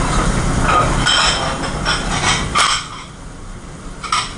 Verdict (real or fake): real